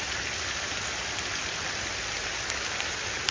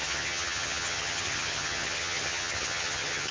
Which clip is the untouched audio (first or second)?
first